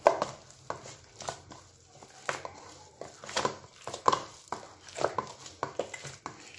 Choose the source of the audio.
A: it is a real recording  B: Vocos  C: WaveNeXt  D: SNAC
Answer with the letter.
A